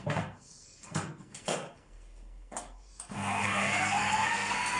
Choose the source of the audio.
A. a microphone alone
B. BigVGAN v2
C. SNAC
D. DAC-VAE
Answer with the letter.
C